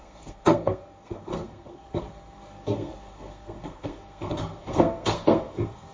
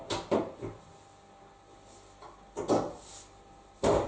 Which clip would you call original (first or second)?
second